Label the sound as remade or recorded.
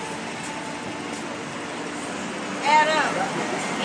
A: recorded